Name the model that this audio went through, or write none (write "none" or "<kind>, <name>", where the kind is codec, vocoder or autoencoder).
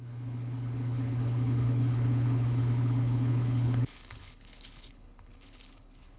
codec, HILCodec